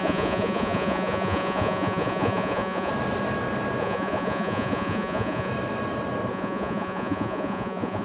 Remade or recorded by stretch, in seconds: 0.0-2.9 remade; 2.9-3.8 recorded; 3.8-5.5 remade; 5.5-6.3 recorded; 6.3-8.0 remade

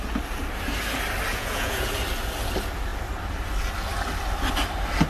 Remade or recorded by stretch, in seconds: 0.0-1.3 recorded; 1.3-1.9 remade; 1.9-5.1 recorded

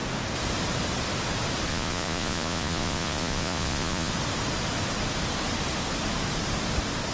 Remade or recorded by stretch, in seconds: 0.0-1.7 recorded; 1.7-4.1 remade; 4.1-7.1 recorded

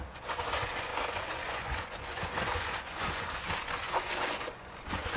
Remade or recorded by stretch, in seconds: 0.0-5.2 remade